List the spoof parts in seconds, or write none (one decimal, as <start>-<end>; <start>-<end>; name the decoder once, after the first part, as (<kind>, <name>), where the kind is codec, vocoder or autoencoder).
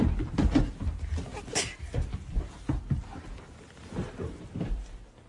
none